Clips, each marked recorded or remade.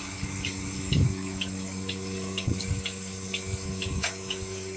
remade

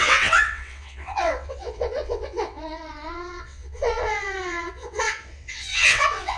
remade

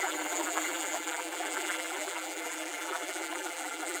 remade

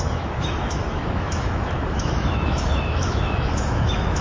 remade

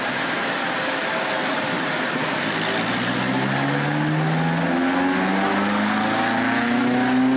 recorded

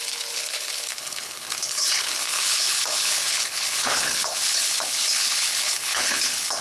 remade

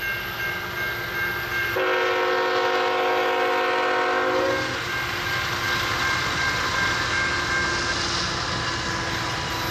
recorded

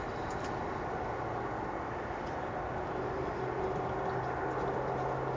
recorded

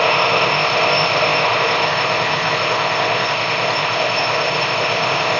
remade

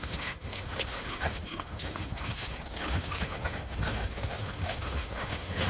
remade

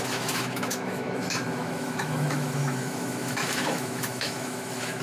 remade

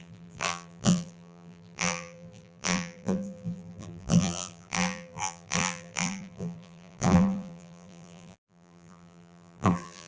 remade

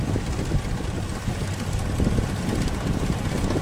recorded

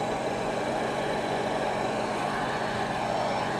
remade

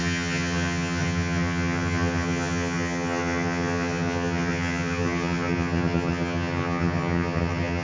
remade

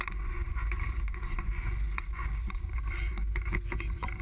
remade